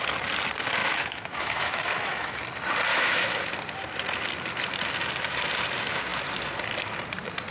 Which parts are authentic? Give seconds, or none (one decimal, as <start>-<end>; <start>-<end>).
0.0-0.8; 2.4-2.9; 3.5-7.5